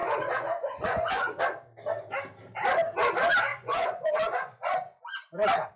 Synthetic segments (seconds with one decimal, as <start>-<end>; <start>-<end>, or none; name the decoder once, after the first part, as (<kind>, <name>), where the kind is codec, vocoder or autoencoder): 0.0-1.4 (vocoder, Vocos); 3.5-5.0